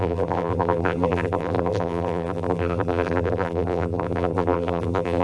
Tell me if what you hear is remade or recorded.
remade